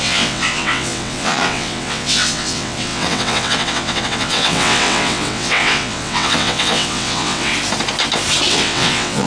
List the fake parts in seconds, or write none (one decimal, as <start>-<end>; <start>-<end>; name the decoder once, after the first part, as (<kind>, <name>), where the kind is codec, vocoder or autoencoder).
0.0-7.5 (vocoder, WaveNeXt); 8.5-9.3

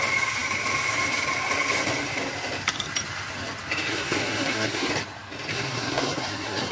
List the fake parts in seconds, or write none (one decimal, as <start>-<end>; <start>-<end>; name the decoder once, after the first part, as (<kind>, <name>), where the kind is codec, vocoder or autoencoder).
3.9-4.9 (codec, SNAC); 5.5-6.7

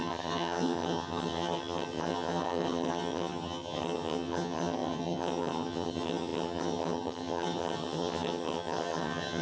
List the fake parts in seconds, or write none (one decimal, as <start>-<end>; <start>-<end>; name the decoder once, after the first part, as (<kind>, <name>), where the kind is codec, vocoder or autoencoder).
0.0-9.4 (vocoder, HiFi-GAN)

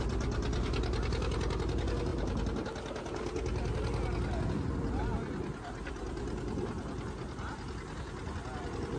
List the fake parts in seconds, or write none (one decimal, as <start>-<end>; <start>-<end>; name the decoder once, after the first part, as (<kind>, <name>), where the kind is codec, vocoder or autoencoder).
none

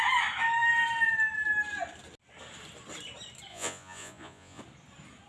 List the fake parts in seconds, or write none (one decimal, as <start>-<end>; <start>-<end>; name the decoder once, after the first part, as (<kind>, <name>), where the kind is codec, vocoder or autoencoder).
3.5-4.6 (vocoder, Vocos)

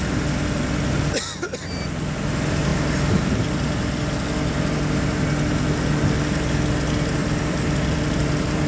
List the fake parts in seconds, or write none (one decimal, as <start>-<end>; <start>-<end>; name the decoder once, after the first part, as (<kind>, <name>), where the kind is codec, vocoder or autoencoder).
7.2-8.7 (vocoder, BigVGAN v2)

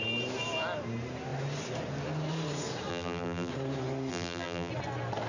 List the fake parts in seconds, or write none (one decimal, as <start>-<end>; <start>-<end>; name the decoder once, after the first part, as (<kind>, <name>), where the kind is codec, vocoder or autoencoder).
2.9-3.5 (vocoder, BigVGAN v2); 4.1-4.7